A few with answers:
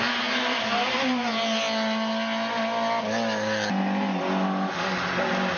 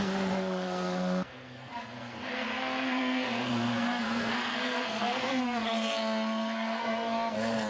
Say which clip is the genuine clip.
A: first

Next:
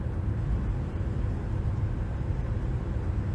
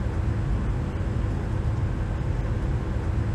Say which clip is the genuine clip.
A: second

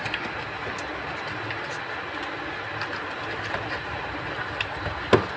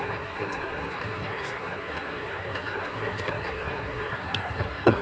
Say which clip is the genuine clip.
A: first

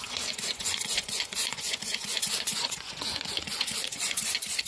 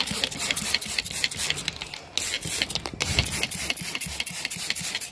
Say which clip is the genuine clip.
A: second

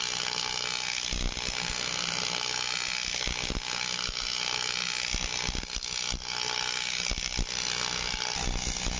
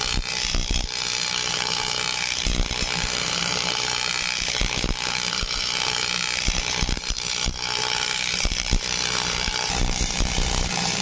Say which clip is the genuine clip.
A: first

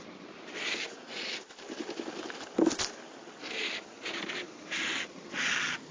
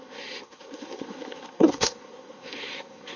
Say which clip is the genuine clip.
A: first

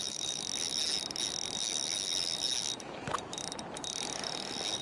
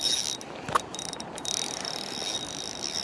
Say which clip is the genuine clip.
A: first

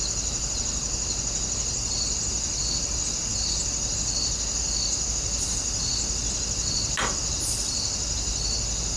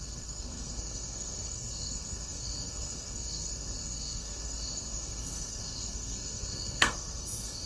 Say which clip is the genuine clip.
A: first